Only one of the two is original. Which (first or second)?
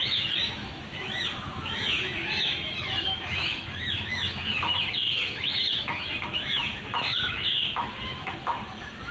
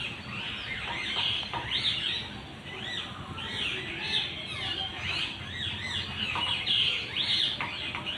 second